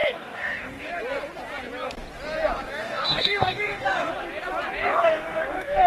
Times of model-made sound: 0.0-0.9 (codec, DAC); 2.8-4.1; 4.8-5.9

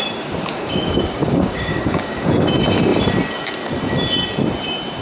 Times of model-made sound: 0.5-2.5 (codec, DAC)

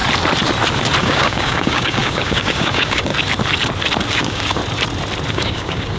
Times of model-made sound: 1.0-3.1 (codec, DAC); 4.1-4.6; 5.3-6.0

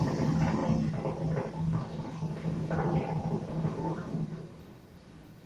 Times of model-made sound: 1.6-2.8 (codec, DAC); 3.5-5.5

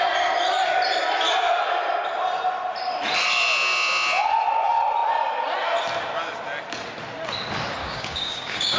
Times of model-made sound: 7.8-8.8 (codec, DAC)

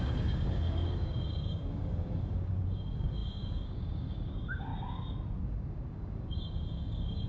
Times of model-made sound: 0.0-4.7 (codec, DAC); 5.4-7.3

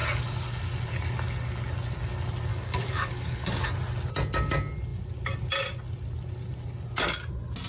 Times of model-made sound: 2.5-3.7 (codec, DAC)